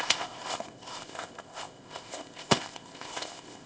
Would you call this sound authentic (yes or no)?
no